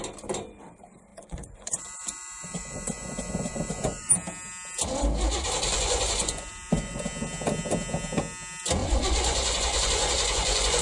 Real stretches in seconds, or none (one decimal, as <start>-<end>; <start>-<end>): 0.0-1.1; 4.1-5.7; 7.0-8.8